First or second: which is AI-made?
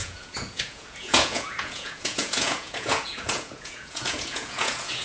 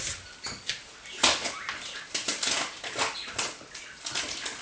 first